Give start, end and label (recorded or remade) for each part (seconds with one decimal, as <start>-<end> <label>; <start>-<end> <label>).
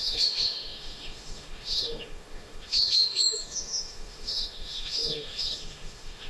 0.0-6.3 remade